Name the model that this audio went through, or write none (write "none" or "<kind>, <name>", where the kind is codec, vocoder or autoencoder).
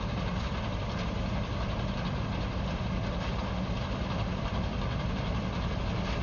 none